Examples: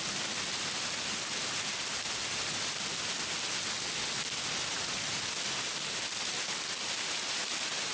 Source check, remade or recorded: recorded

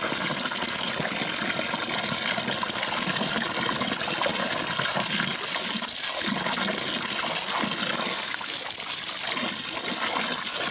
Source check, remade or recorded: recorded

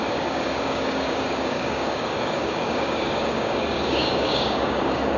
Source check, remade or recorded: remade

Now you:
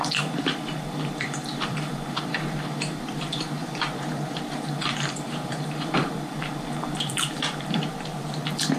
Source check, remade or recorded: remade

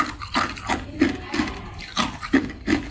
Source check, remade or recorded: recorded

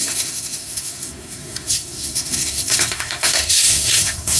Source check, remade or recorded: remade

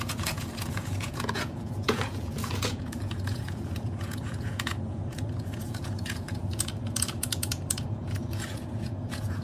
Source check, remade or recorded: remade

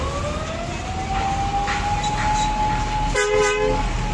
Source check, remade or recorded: recorded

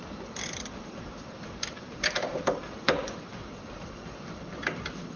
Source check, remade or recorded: remade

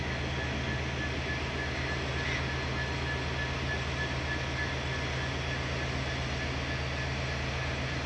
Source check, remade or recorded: recorded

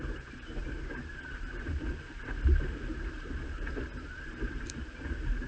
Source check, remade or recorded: remade